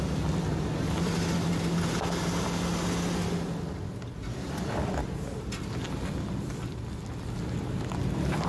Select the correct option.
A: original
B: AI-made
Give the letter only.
A